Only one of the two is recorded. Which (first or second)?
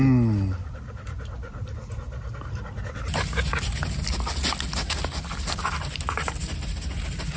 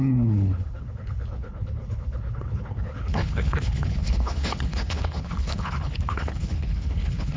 first